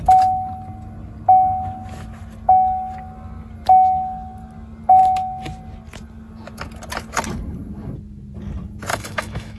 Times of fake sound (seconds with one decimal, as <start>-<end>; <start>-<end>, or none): 8.9-9.6